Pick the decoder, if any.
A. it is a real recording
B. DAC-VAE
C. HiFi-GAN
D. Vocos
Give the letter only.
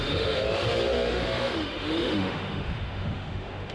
B